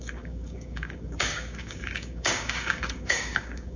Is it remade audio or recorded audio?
remade